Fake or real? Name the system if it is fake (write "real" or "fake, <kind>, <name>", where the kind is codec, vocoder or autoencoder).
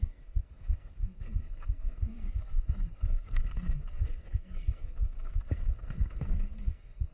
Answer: fake, codec, SNAC